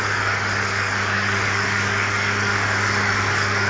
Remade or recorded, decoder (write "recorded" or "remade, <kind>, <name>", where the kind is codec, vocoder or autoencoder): remade, codec, DAC